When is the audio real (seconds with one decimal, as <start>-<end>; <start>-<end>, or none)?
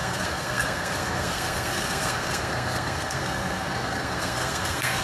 none